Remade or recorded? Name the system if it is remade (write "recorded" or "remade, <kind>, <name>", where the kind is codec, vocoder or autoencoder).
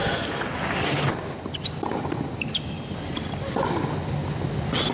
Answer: recorded